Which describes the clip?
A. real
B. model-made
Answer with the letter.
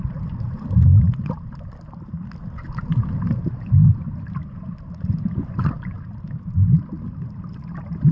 A